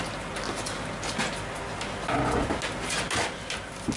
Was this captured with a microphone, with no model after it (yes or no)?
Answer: yes